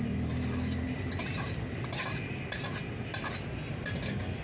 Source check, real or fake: real